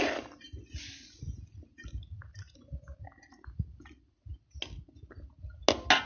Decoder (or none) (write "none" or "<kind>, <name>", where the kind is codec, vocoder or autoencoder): none